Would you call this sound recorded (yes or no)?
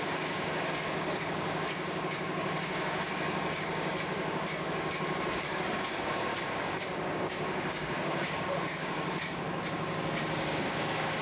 no